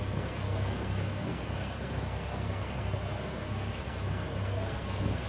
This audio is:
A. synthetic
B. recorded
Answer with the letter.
A